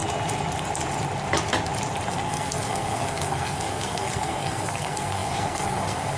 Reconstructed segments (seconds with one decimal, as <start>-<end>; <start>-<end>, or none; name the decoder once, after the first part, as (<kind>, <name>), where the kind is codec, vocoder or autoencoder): 2.1-6.2 (codec, SNAC)